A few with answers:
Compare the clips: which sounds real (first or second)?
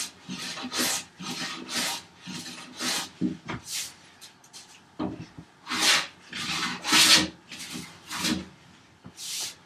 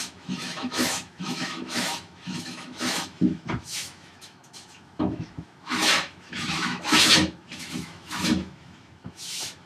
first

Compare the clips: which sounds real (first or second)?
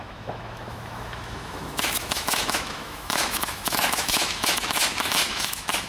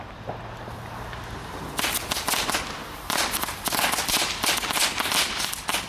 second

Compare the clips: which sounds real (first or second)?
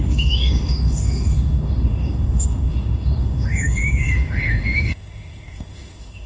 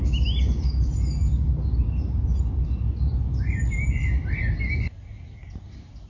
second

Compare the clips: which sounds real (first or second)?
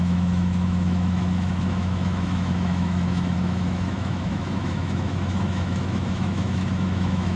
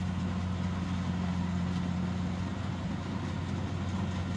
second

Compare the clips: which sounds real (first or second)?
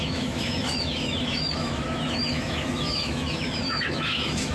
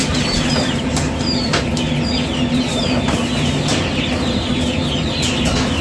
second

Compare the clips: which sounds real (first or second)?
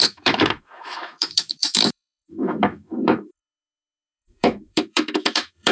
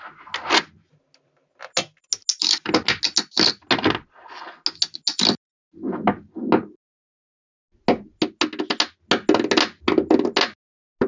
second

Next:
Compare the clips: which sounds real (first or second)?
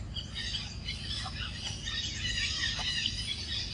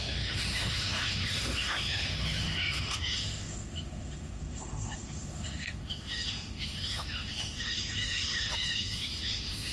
first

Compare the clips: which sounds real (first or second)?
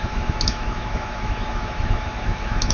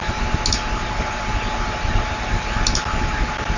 second